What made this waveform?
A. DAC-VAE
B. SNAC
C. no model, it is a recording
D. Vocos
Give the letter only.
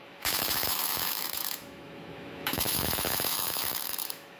A